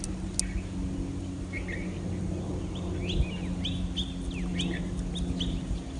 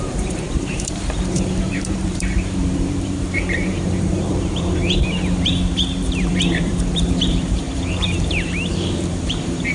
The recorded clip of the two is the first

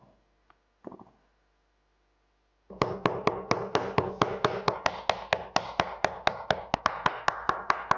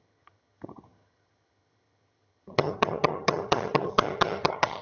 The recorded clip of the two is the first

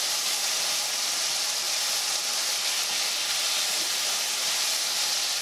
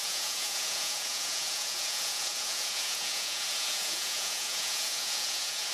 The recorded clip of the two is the first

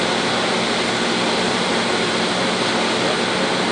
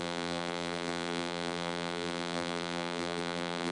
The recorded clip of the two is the first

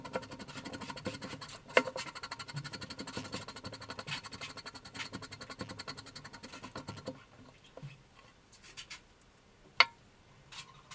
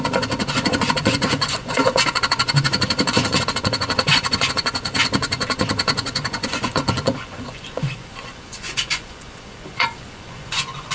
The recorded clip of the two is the first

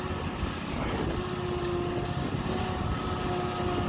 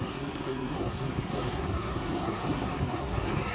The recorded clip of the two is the first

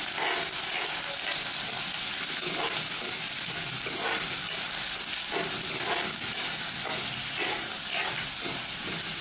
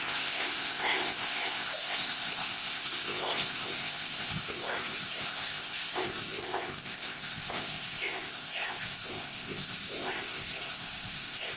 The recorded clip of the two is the first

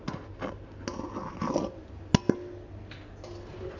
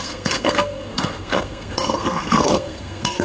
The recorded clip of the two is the first